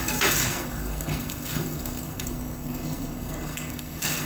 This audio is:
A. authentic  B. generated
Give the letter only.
B